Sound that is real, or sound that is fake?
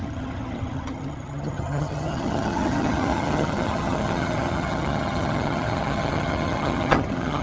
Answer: fake